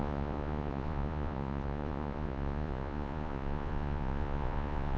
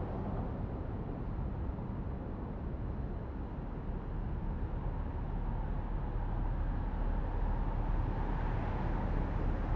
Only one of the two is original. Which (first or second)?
second